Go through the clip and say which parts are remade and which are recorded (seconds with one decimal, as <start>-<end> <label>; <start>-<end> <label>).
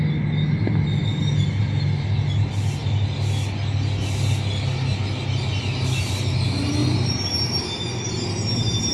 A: 0.0-6.8 recorded; 6.8-7.4 remade; 7.4-8.9 recorded